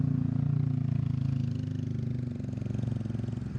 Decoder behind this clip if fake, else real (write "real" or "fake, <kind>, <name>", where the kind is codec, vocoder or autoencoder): real